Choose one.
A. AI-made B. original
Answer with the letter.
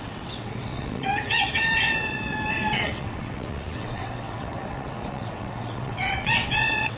A